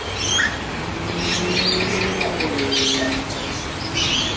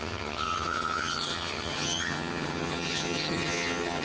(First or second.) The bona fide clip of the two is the first